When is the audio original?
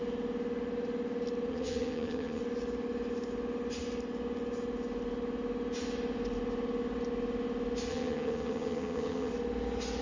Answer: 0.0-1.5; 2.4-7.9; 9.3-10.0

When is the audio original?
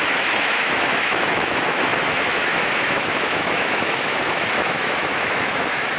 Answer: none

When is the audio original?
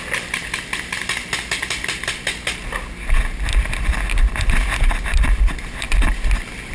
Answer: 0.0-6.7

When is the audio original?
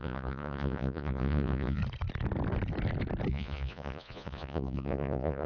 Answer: 1.8-3.3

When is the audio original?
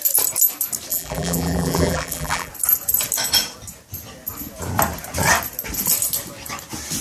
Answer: 0.0-0.9; 2.5-7.0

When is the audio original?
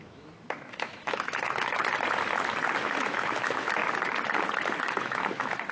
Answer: 1.8-2.8; 3.8-4.8